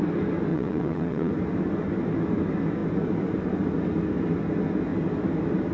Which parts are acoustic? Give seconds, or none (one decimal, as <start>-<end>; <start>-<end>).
0.0-0.5; 1.3-5.7